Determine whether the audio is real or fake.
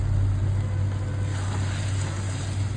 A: real